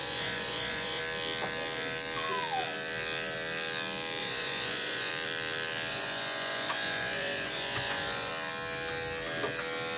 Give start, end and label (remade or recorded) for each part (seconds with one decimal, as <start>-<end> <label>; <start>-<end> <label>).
0.0-1.0 remade; 1.0-4.2 recorded; 4.2-5.1 remade; 5.1-5.9 recorded; 5.9-8.3 remade; 8.3-10.0 recorded